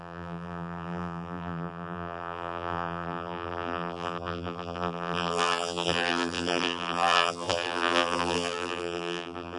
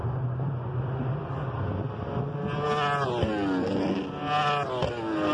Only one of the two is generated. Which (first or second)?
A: first